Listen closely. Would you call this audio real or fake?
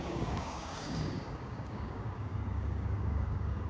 fake